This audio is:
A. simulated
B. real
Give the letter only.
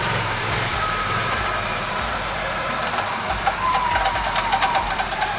A